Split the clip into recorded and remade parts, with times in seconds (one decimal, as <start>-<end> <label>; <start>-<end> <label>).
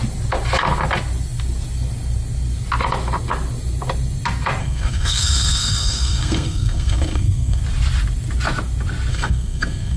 0.0-4.6 recorded; 4.6-7.6 remade; 7.6-9.1 recorded; 9.1-10.0 remade